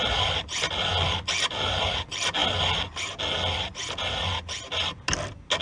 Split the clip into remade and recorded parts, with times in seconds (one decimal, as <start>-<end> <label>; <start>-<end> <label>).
0.0-5.6 recorded